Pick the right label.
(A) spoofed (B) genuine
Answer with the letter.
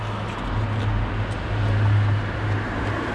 B